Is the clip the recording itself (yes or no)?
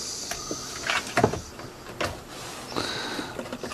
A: yes